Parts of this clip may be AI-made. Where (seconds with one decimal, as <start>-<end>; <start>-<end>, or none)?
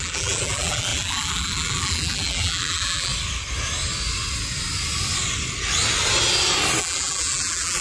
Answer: 0.0-3.1; 6.8-7.8